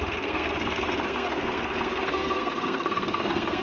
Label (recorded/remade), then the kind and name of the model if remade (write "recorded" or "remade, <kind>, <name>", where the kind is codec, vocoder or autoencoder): remade, codec, SNAC